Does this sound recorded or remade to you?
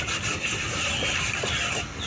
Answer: recorded